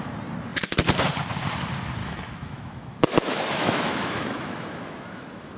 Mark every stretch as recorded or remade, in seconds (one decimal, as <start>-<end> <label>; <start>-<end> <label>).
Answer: 0.0-2.0 recorded; 2.0-5.6 remade